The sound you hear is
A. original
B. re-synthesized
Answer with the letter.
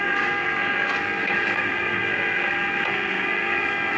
B